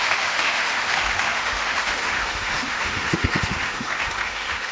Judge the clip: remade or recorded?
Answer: remade